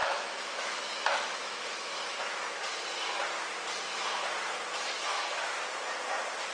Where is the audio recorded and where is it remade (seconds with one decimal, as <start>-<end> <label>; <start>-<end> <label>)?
0.0-2.5 remade; 2.5-5.1 recorded; 5.1-5.6 remade; 5.6-6.5 recorded